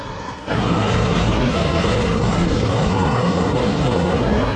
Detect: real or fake fake